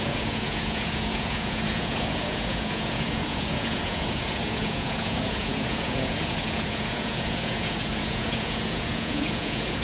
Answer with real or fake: fake